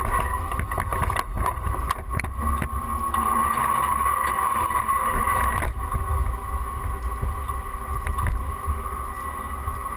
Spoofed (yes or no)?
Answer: no